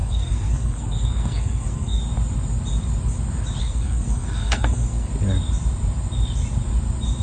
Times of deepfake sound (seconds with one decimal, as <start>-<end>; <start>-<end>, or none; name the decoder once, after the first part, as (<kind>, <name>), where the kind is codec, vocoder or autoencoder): 0.0-2.0 (codec, SNAC); 3.6-5.1